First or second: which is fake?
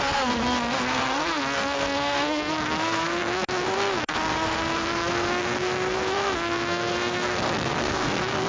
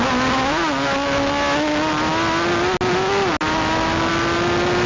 first